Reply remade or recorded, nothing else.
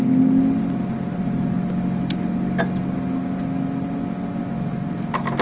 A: recorded